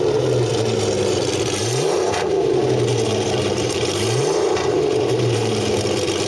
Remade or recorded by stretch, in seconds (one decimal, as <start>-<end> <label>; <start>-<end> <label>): 0.0-0.5 recorded; 0.5-1.2 remade; 1.2-1.6 recorded; 1.6-2.5 remade; 2.5-2.9 recorded; 2.9-5.7 remade; 5.7-6.3 recorded